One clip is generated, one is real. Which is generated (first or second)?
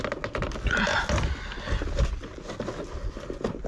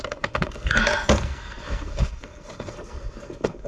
second